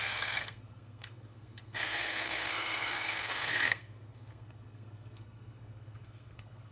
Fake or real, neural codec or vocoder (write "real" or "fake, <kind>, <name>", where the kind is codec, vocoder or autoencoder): fake, codec, SNAC